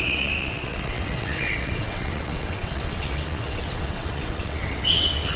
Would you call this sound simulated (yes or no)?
yes